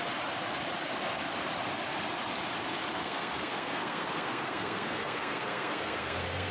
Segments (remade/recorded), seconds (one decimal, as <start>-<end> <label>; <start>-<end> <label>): 0.0-3.0 recorded; 3.0-6.5 remade